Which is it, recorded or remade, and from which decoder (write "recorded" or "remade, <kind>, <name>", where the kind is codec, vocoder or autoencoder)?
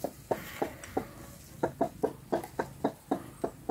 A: recorded